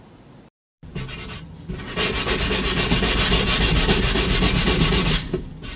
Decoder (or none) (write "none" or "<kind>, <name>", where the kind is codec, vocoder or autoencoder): none